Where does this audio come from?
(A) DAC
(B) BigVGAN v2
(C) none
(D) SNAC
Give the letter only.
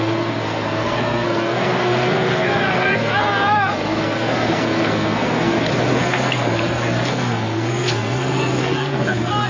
D